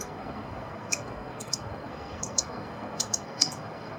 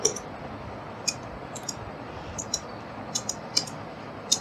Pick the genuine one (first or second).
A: second